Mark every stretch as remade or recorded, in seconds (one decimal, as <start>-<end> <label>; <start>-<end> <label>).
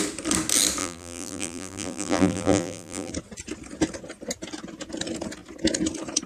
0.0-0.8 recorded; 0.8-3.1 remade; 3.1-6.3 recorded